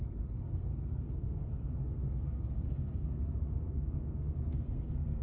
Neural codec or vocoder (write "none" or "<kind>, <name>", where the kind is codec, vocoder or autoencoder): codec, SNAC